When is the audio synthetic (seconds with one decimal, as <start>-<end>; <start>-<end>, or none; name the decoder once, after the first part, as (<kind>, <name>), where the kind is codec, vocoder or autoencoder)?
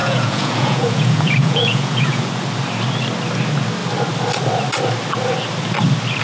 0.0-2.2 (vocoder, Vocos)